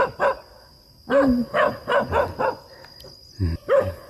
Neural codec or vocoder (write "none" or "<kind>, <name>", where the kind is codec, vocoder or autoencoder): none